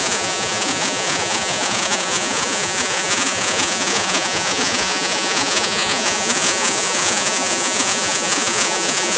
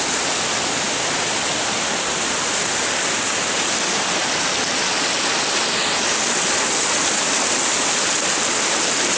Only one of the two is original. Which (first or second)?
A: second